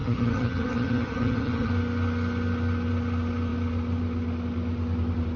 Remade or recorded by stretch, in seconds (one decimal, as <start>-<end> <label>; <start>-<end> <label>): 0.0-1.7 remade; 1.7-5.4 recorded

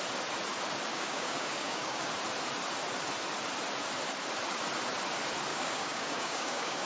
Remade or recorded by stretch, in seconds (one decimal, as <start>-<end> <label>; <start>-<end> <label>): 0.0-0.9 recorded; 0.9-2.1 remade; 2.1-5.5 recorded; 5.5-6.9 remade

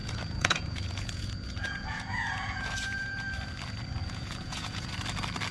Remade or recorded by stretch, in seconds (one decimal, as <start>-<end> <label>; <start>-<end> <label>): 0.0-3.3 remade; 3.3-4.0 recorded; 4.0-4.9 remade; 4.9-5.5 recorded

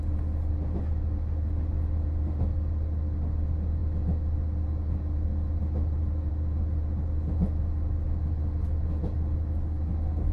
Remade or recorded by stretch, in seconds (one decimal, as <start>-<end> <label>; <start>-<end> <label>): 0.0-10.3 recorded

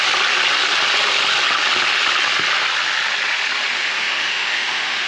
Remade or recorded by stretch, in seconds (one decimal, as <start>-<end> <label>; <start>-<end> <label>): 0.0-3.8 recorded; 3.8-5.1 remade

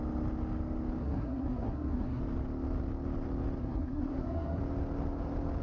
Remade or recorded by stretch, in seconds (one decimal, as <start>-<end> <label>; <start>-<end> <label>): 0.0-1.0 recorded; 1.0-2.2 remade; 2.2-3.6 recorded; 3.6-4.6 remade; 4.6-5.6 recorded

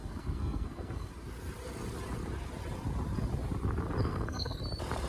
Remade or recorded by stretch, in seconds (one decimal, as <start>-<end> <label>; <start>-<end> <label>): 0.0-1.1 remade; 1.1-4.0 recorded; 4.0-4.6 remade; 4.6-5.1 recorded

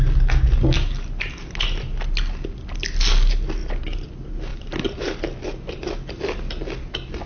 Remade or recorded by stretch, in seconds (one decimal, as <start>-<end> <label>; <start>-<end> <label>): 0.0-3.6 recorded; 3.6-4.1 remade; 4.1-4.5 recorded; 4.5-5.2 remade; 5.2-7.3 recorded